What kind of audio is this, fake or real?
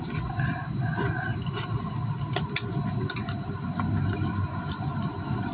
real